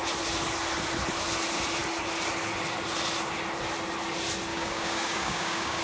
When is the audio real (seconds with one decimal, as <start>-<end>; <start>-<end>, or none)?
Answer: 0.0-4.5

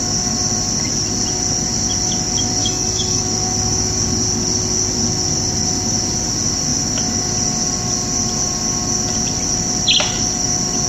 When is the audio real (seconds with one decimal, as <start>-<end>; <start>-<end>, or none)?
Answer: 0.0-2.6; 3.2-10.9

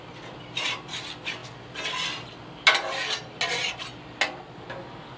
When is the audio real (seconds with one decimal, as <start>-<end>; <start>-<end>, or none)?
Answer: 0.0-5.2

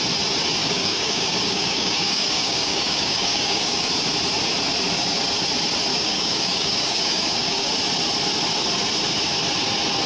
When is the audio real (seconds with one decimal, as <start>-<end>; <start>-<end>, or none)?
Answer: 0.0-0.6; 3.9-5.9; 7.7-10.1

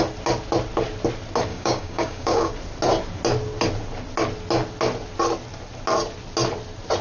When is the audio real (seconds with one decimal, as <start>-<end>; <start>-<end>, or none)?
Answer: 0.0-1.5; 2.5-7.0

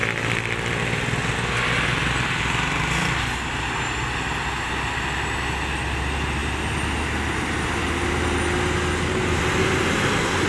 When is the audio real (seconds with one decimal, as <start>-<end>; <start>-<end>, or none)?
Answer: 0.0-10.5

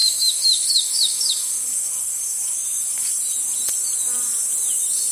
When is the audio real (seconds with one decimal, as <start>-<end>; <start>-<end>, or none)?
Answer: 3.1-5.1